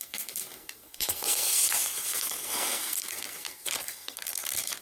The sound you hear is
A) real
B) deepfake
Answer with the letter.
B